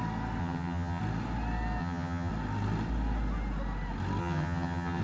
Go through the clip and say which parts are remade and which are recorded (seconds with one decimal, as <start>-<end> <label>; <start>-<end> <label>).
0.0-0.4 recorded; 0.4-1.0 remade; 1.0-1.8 recorded; 1.8-2.3 remade; 2.3-4.2 recorded; 4.2-5.0 remade